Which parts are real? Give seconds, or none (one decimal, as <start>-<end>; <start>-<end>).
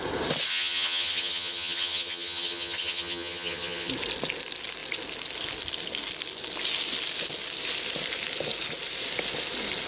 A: 0.0-0.5; 3.9-9.9